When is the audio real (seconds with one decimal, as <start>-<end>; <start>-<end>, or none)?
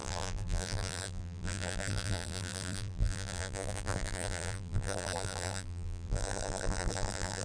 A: none